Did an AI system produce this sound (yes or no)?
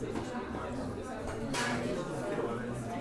no